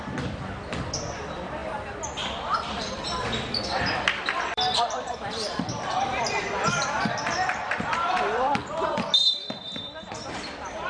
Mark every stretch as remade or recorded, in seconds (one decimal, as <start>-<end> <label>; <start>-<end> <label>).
0.0-8.6 remade; 8.6-9.2 recorded; 9.2-10.9 remade